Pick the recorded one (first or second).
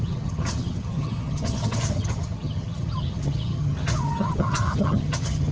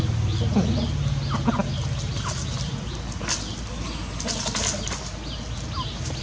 second